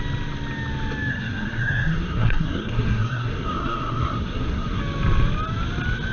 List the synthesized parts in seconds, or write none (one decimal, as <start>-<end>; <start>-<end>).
1.1-4.8